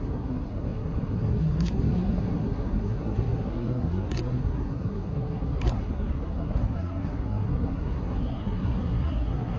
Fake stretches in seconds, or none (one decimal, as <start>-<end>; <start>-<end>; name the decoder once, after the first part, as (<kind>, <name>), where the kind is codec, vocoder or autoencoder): 0.0-9.6 (codec, SNAC)